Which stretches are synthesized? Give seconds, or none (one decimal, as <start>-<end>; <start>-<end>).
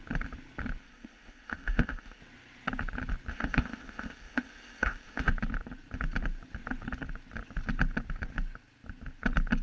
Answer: 0.8-2.2; 3.3-5.3